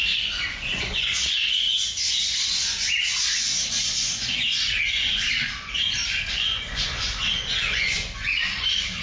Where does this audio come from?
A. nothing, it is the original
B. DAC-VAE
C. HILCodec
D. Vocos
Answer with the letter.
D